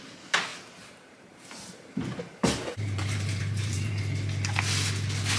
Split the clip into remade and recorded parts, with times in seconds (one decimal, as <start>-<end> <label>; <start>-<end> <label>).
0.0-0.5 recorded; 0.5-1.9 remade; 1.9-2.4 recorded; 2.4-4.0 remade; 4.0-5.4 recorded